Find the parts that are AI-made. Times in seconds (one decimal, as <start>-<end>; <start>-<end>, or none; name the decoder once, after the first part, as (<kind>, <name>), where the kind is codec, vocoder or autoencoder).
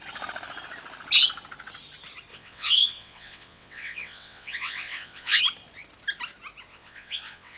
2.3-5.4 (vocoder, WaveNeXt); 6.7-7.6